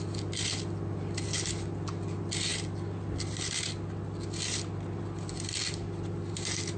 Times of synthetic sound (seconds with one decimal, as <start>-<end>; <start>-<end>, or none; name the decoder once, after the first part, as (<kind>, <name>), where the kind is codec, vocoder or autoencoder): none